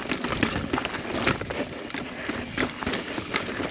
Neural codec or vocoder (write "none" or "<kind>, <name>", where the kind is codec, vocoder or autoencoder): none